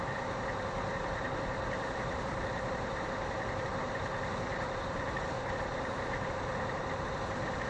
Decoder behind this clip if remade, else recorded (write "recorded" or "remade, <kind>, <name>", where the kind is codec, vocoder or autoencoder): recorded